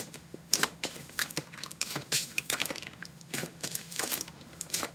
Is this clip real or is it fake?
fake